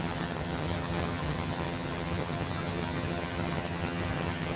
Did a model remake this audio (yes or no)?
yes